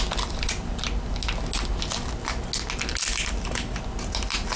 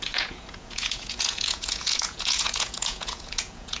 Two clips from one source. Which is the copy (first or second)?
second